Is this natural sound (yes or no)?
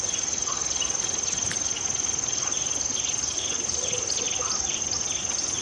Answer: yes